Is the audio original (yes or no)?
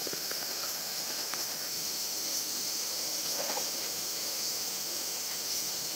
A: no